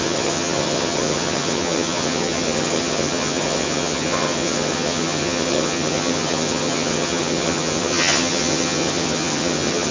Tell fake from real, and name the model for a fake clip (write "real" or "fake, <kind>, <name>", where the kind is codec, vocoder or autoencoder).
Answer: fake, vocoder, HiFi-GAN